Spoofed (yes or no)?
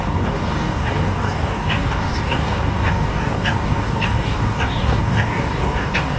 yes